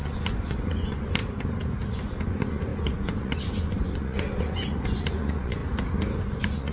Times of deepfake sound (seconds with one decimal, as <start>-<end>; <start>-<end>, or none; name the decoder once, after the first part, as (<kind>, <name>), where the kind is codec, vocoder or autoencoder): 0.0-1.2 (vocoder, Vocos); 2.0-5.6; 6.2-6.7